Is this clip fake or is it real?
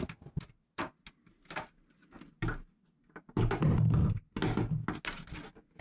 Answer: real